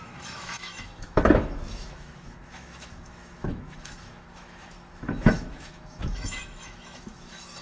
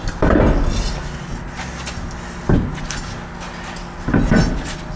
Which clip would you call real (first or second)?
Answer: second